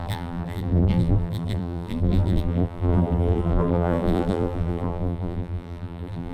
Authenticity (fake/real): fake